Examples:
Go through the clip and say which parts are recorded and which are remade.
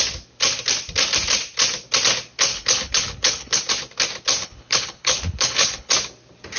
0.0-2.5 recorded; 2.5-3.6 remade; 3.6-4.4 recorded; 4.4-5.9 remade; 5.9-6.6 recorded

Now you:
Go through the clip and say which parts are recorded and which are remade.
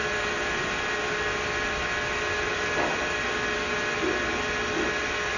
0.0-5.4 recorded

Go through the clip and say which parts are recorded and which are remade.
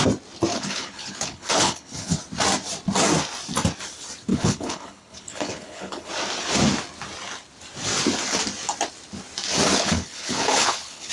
0.0-0.5 recorded; 0.5-2.2 remade; 2.2-4.3 recorded; 4.3-6.1 remade; 6.1-9.7 recorded; 9.7-11.1 remade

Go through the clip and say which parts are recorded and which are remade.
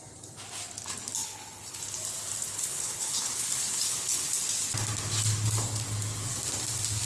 0.0-1.2 recorded; 1.2-1.8 remade; 1.8-2.5 recorded; 2.5-4.4 remade; 4.4-7.0 recorded